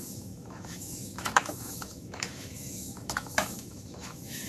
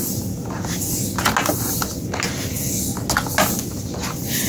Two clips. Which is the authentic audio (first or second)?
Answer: second